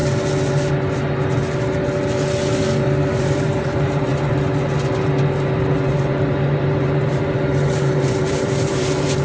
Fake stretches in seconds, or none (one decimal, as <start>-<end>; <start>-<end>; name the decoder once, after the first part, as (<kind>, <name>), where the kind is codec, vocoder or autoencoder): 3.2-4.1 (vocoder, BigVGAN v2); 5.9-9.2